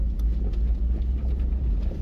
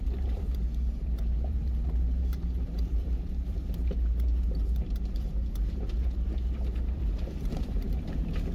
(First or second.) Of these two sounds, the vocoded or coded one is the second